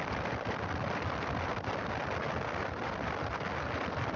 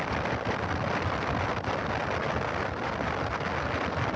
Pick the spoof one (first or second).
first